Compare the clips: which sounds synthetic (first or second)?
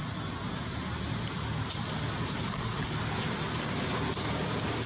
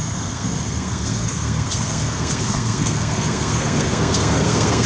second